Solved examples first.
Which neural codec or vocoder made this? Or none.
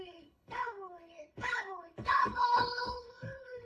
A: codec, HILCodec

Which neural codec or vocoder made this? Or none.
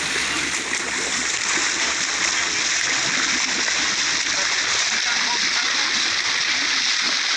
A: none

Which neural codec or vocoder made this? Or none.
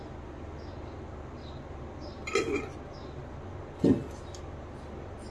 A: none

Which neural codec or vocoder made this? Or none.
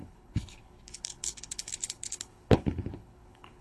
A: codec, HILCodec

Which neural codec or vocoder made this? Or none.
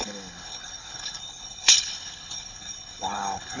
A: codec, HILCodec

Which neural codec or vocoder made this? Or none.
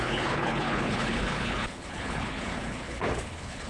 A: codec, HILCodec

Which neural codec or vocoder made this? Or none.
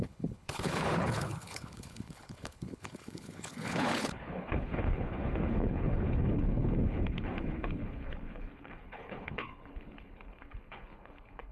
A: codec, HILCodec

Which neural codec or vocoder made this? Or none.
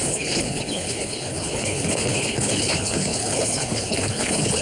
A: codec, HILCodec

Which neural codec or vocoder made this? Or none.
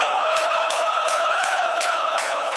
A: codec, HILCodec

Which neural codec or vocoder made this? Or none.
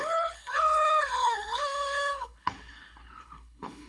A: codec, HILCodec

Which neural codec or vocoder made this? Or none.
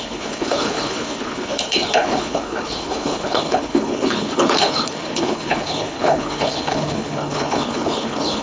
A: codec, HILCodec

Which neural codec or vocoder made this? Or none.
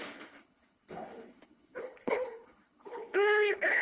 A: codec, HILCodec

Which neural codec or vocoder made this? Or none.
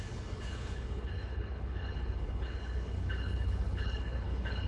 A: codec, HILCodec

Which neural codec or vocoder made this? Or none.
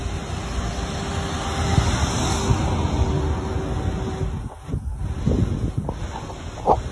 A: none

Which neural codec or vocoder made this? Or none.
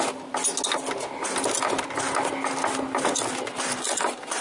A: none